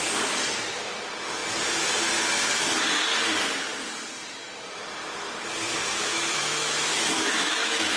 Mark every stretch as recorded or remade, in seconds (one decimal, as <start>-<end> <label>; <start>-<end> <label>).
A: 0.0-5.9 recorded; 5.9-8.0 remade